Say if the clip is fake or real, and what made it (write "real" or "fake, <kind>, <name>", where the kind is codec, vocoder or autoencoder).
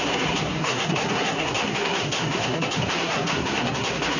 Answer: fake, codec, SNAC